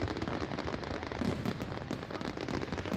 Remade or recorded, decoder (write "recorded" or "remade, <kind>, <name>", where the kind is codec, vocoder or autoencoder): recorded